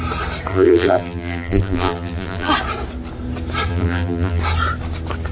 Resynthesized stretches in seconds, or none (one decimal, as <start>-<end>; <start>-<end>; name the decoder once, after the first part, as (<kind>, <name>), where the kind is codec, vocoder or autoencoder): 0.5-2.5 (vocoder, BigVGAN v2); 3.7-4.4